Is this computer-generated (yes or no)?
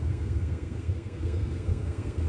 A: yes